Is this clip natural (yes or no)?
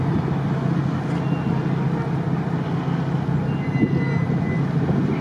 yes